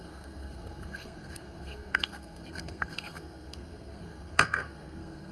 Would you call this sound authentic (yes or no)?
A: no